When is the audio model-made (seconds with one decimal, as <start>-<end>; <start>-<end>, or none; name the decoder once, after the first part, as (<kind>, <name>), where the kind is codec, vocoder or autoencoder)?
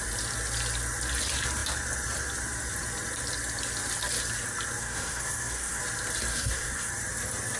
4.8-5.8 (codec, SNAC); 6.3-6.9